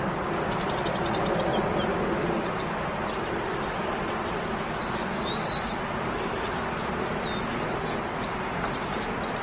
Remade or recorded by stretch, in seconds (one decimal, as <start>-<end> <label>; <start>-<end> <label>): 0.0-9.4 recorded